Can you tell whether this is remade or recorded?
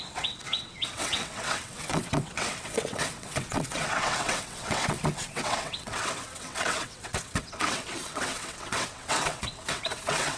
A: remade